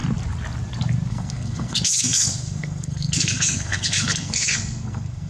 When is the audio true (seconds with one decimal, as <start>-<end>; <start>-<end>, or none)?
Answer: 0.0-1.1

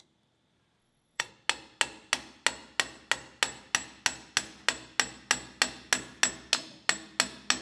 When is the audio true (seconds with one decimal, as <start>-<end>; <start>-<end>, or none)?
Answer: 0.0-0.8; 1.3-7.6

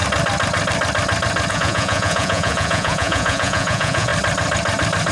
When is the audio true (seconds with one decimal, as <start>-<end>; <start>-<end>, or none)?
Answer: 0.0-1.5; 4.1-5.1

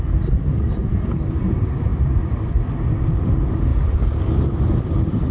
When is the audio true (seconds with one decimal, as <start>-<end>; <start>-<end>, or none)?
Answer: 0.0-1.9; 2.9-3.7

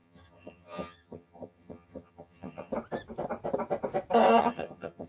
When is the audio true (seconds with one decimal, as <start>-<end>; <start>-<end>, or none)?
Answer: 2.7-4.4